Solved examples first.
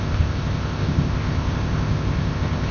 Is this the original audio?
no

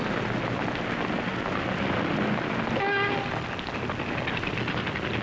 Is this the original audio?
yes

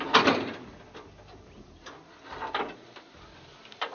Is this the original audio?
yes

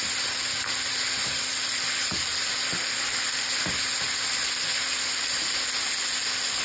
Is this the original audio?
yes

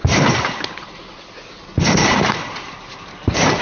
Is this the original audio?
yes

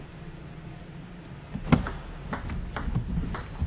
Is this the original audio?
yes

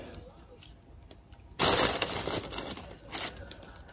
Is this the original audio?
yes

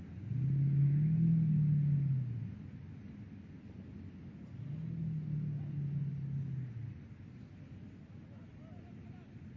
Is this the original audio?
yes